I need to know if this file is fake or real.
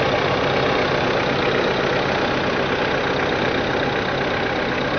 real